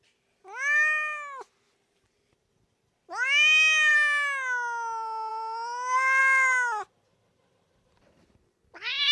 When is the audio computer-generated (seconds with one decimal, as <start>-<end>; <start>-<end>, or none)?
none